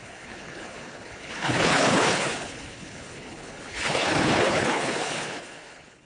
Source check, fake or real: fake